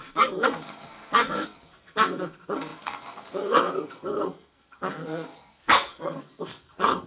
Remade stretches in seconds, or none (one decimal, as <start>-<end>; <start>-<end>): 0.0-7.1